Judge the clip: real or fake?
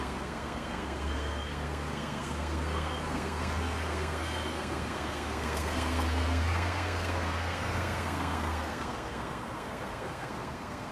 fake